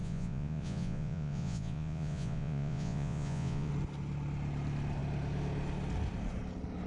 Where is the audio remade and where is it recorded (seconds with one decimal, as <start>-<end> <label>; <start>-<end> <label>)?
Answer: 0.0-3.7 remade; 3.7-6.9 recorded